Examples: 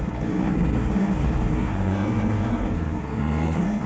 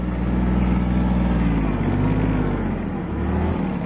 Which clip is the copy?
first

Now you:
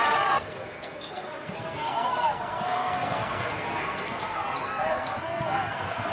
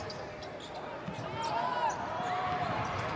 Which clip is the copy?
first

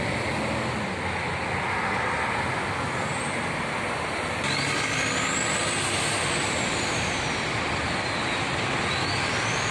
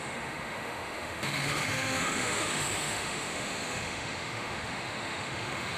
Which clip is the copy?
second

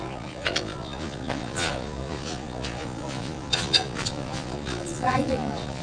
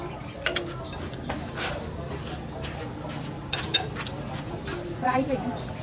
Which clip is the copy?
first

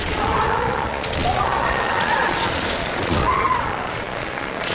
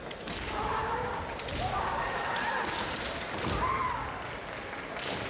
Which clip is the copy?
first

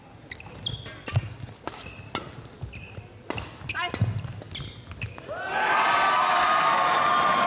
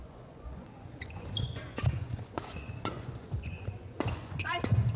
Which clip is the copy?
second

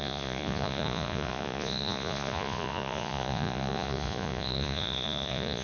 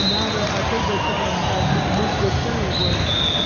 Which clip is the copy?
first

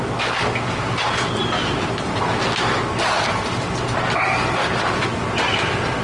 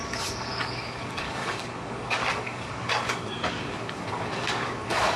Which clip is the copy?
second